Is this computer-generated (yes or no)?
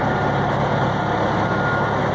no